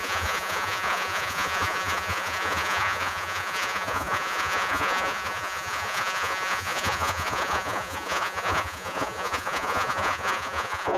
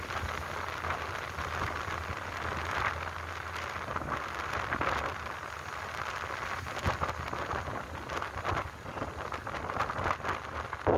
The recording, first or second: second